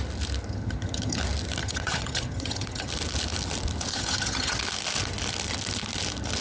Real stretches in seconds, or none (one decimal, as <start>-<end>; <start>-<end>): 0.0-0.5; 1.2-1.6; 2.9-3.9; 4.6-6.4